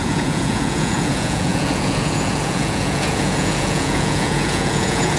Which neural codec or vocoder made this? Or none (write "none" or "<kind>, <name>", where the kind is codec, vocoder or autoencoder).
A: vocoder, Vocos